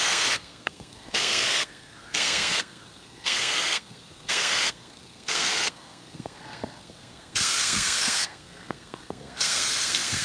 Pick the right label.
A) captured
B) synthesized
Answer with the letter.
B